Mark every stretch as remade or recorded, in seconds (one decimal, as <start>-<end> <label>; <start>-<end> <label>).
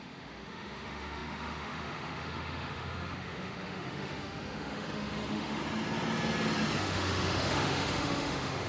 0.0-5.6 remade; 5.6-6.8 recorded; 6.8-8.7 remade